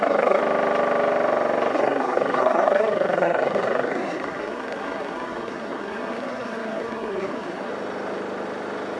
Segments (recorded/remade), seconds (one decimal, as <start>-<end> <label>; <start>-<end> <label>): 0.0-0.4 remade; 0.4-1.7 recorded; 1.7-7.7 remade; 7.7-9.0 recorded